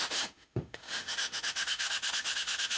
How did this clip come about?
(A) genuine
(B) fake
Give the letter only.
B